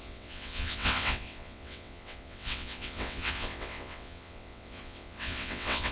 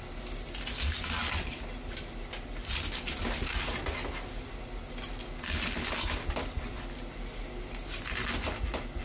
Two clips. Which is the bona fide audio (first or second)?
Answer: second